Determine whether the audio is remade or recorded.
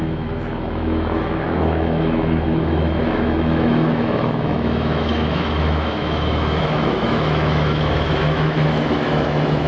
remade